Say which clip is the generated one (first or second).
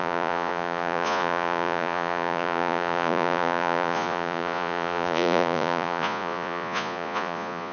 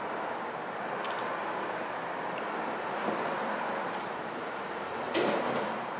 first